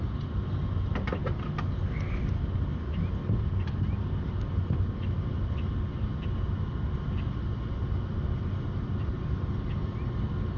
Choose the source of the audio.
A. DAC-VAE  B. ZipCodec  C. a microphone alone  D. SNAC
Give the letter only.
C